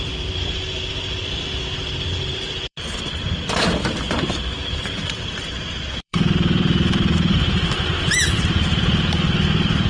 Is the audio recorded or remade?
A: remade